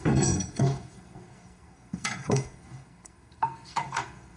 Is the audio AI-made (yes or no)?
yes